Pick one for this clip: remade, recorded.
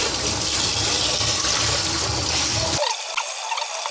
recorded